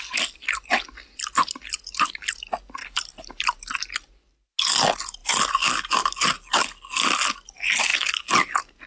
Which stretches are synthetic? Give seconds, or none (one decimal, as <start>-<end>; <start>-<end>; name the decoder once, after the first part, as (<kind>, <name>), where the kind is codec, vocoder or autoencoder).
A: 2.8-3.3 (codec, HILCodec)